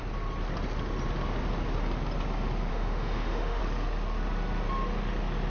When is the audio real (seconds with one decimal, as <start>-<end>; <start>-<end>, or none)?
0.0-2.7; 3.6-5.5